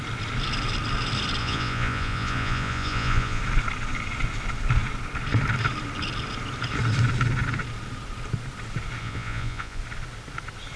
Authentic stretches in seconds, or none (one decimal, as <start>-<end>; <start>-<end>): 0.0-1.4; 3.4-9.0; 9.8-10.8